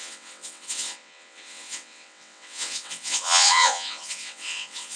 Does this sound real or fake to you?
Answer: fake